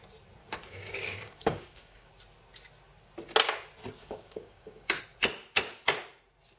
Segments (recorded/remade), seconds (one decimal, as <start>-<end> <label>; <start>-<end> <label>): 0.0-0.4 recorded; 0.4-2.1 remade; 2.1-4.0 recorded; 4.0-5.0 remade; 5.0-6.6 recorded